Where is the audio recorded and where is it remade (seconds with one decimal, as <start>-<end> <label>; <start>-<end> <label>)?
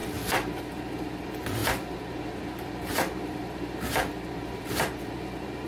0.0-0.6 recorded; 0.6-5.7 remade